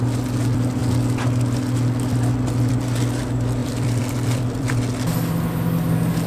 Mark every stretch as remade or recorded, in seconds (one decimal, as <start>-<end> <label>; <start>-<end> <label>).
0.0-3.6 recorded; 3.6-4.8 remade; 4.8-6.3 recorded